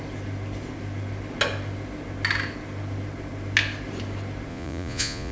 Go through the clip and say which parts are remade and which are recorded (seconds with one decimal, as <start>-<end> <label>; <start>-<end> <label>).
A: 0.0-4.5 recorded; 4.5-5.3 remade